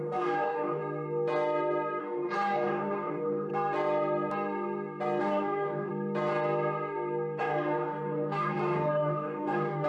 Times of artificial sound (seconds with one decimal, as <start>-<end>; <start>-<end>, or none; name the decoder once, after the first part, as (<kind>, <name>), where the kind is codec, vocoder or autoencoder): 0.0-0.8 (codec, DAC); 2.0-3.5; 5.2-5.9; 7.4-9.9